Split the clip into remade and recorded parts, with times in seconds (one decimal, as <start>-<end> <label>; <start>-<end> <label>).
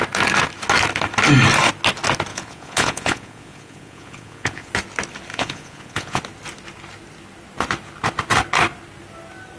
0.0-2.3 recorded; 2.3-4.7 remade; 4.7-5.3 recorded; 5.3-6.2 remade; 6.2-9.6 recorded